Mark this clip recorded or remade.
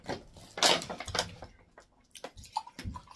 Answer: recorded